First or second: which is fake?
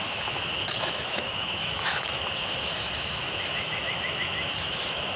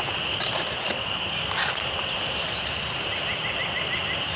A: first